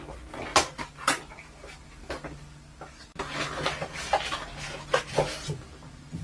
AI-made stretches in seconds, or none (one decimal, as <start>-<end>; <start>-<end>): 0.5-2.0